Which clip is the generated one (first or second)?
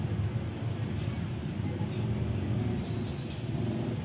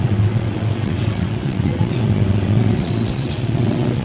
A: second